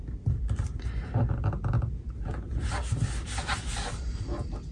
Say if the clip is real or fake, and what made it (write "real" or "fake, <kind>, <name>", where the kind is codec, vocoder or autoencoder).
real